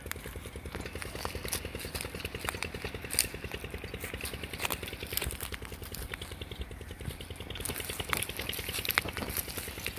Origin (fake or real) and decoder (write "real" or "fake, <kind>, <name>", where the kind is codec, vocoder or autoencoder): real